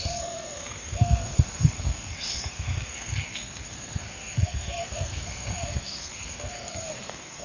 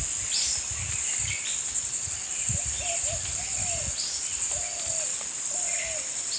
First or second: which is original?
second